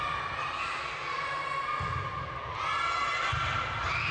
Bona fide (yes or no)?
yes